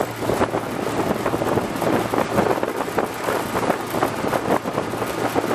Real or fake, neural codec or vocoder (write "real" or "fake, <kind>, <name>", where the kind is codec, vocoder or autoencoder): real